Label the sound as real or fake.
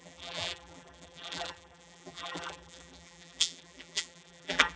fake